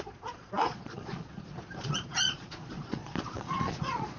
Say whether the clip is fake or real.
fake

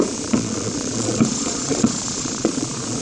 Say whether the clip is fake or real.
fake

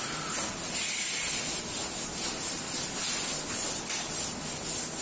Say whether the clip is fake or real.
real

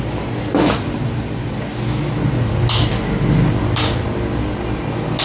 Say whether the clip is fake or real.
real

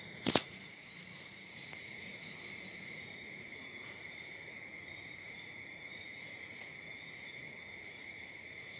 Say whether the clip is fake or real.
fake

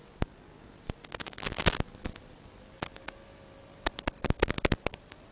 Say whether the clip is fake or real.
real